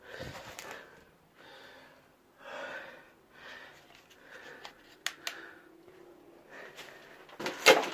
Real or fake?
real